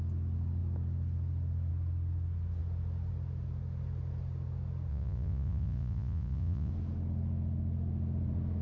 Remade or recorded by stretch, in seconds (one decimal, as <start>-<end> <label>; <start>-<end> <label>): 0.0-4.9 recorded; 4.9-6.7 remade; 6.7-8.6 recorded